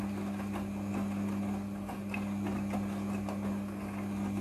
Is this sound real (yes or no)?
yes